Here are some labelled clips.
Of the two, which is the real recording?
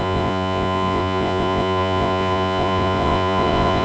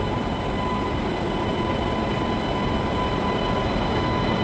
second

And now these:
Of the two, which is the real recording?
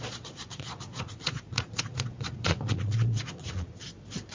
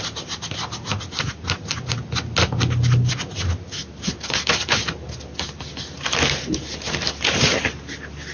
second